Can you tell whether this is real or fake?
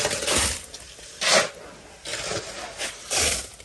real